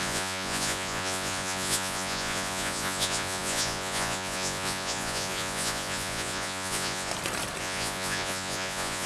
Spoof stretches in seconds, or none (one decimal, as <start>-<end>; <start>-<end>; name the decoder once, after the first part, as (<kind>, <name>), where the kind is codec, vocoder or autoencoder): 0.0-7.1 (vocoder, Vocos); 7.6-9.1